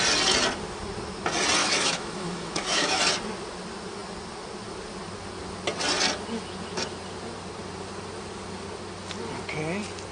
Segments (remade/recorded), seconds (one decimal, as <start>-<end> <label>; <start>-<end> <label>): 0.0-1.6 recorded; 1.6-3.0 remade; 3.0-10.1 recorded